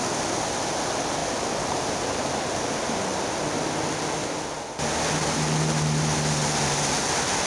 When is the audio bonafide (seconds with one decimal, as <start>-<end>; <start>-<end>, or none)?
0.0-7.5